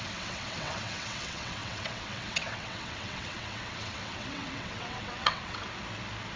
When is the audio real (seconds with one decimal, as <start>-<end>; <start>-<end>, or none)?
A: 5.6-6.4